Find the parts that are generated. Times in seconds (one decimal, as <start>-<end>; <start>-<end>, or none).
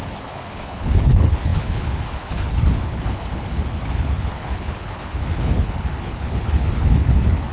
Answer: 0.0-7.5